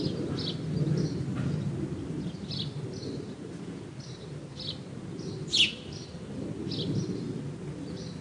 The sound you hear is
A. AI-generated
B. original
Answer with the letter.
B